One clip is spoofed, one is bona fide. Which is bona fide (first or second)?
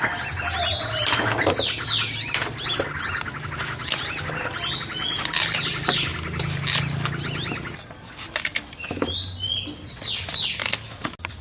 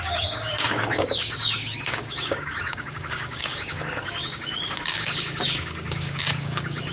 first